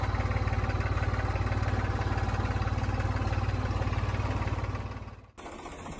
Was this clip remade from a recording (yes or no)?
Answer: no